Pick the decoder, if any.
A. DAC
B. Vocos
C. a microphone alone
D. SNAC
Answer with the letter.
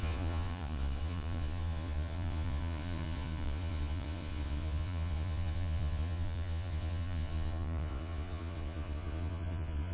B